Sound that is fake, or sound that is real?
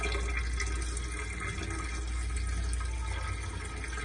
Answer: real